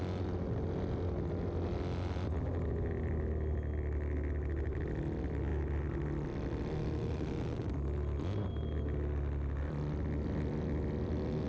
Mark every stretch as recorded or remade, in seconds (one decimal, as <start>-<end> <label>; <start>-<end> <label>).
0.0-11.5 recorded